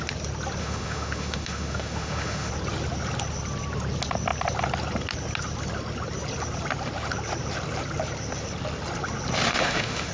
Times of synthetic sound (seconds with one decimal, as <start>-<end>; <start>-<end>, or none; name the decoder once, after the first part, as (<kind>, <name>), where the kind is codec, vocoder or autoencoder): 0.6-2.5 (autoencoder, DAC-VAE); 9.5-10.1